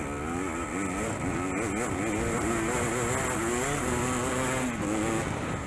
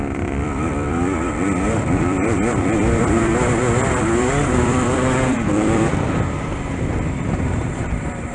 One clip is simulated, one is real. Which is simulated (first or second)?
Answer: second